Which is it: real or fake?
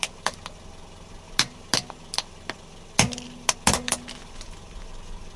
real